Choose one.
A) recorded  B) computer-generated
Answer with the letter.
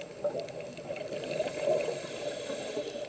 B